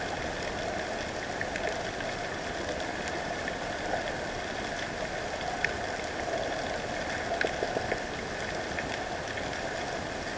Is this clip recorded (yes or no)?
yes